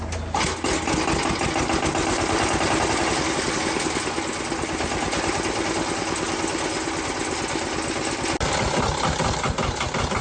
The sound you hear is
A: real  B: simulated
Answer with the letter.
A